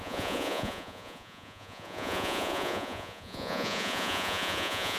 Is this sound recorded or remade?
remade